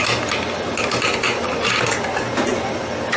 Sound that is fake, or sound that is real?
real